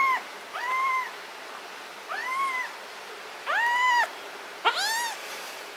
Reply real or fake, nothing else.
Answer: real